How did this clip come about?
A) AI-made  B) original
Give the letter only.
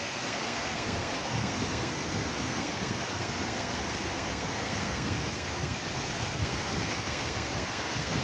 A